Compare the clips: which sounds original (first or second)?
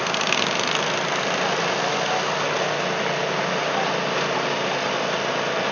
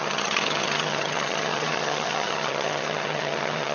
first